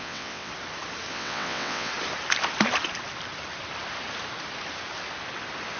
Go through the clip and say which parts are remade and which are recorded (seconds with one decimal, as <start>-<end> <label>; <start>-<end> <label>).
0.0-0.5 remade; 0.5-1.1 recorded; 1.1-1.9 remade; 1.9-5.8 recorded